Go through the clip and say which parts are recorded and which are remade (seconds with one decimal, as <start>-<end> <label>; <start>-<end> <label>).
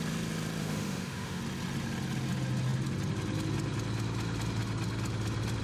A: 0.0-0.6 recorded; 0.6-1.4 remade; 1.4-5.6 recorded